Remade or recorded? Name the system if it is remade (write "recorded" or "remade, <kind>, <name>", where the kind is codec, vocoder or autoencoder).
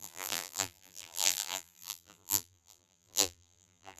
remade, vocoder, BigVGAN v2